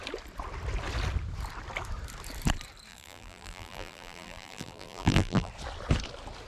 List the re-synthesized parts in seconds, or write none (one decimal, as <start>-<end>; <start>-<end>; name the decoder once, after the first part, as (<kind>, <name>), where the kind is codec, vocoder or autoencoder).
2.9-5.5 (vocoder, BigVGAN v2)